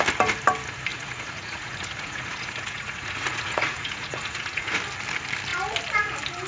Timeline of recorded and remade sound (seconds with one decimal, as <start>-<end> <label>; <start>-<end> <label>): 0.0-0.9 recorded; 0.9-4.8 remade; 4.8-6.5 recorded